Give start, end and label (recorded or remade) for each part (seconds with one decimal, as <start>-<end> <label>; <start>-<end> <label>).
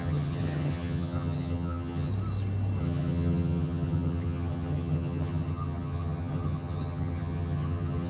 0.0-2.1 remade; 2.1-2.8 recorded; 2.8-8.1 remade